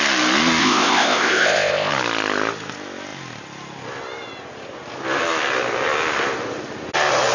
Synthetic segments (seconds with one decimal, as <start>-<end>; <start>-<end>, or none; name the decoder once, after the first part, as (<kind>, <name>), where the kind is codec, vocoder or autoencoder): 0.6-1.9 (codec, ZipCodec)